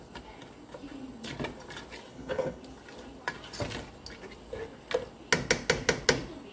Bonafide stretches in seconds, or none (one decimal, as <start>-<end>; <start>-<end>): 0.0-2.1; 2.6-6.5